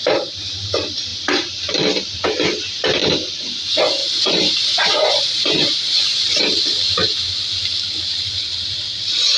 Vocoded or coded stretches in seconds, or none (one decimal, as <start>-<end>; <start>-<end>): 3.0-3.6; 4.0-6.4